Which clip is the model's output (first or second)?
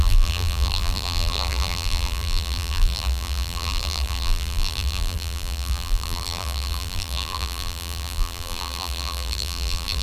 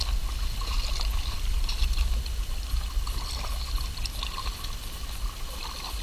first